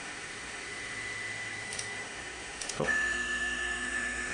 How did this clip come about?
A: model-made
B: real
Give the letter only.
A